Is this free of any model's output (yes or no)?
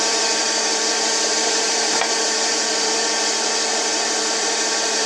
no